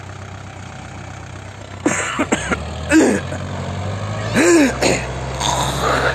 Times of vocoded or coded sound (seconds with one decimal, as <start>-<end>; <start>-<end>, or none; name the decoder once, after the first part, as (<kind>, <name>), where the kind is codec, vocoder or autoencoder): 1.6-2.3 (codec, SNAC)